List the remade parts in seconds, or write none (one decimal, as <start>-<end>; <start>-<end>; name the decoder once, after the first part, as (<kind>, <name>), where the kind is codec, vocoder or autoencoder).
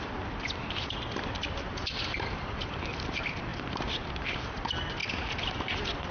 0.0-5.0 (vocoder, BigVGAN v2); 5.6-6.1